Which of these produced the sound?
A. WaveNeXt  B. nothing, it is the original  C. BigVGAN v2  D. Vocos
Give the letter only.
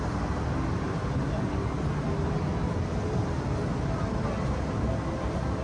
B